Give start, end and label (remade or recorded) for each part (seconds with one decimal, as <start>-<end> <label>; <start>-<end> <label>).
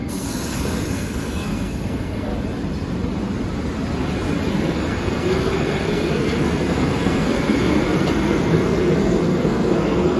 0.0-2.3 remade; 2.3-4.5 recorded; 4.5-10.2 remade